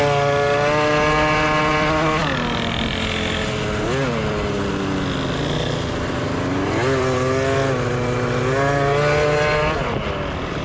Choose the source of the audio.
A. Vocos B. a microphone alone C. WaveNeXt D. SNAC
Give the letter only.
B